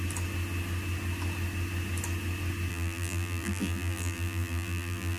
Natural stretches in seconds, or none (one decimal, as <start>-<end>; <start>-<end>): 0.0-2.7